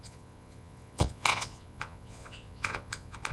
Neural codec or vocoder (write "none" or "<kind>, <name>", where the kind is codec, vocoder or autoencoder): vocoder, Vocos